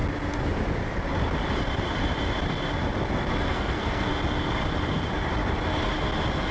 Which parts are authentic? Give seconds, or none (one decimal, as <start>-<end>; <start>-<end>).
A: 0.0-3.5; 4.1-6.5